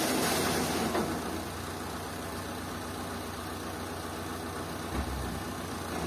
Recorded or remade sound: recorded